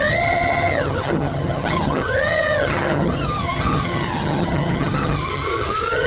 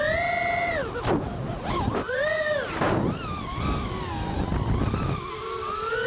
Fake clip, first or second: first